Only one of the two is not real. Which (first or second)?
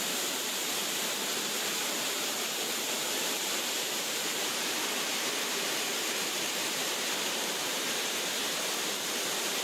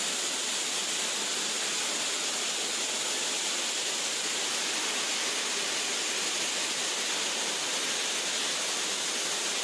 first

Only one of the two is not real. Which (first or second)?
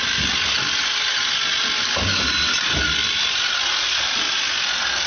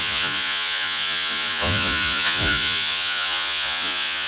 second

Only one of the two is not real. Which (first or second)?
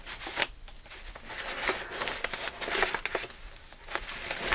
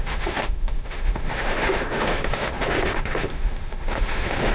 second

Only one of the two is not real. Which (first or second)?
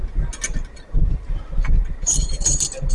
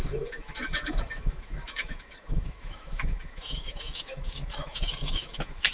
second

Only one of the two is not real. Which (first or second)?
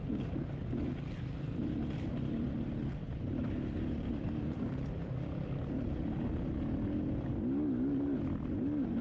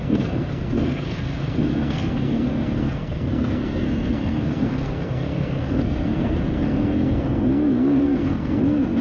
second